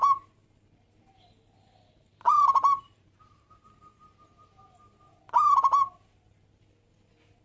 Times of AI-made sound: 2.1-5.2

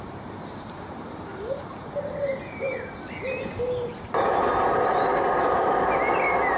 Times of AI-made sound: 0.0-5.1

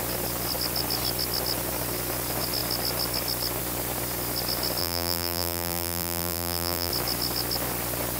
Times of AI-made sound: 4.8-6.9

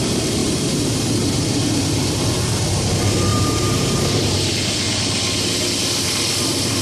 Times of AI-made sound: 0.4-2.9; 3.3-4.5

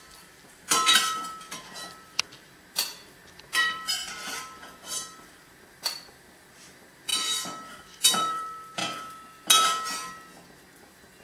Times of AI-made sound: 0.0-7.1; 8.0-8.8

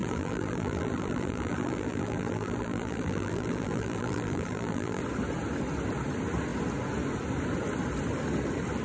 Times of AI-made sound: 0.0-5.0

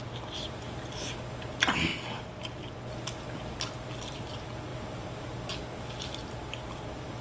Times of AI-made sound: none

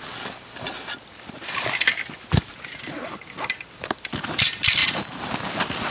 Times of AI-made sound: 0.0-4.8